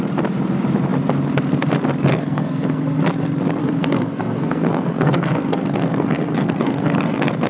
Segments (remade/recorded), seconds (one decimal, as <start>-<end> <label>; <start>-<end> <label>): 0.0-2.1 recorded; 2.1-3.0 remade; 3.0-3.6 recorded; 3.6-7.5 remade